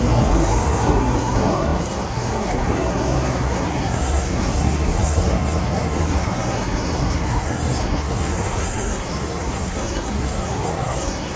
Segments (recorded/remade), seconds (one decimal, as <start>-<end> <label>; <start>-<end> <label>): 0.0-11.4 remade